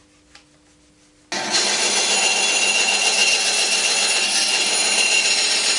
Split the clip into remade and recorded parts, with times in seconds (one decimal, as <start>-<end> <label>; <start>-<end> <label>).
0.0-5.8 recorded